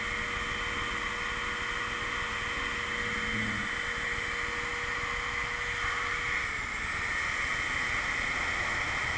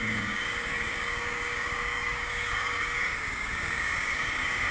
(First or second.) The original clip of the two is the first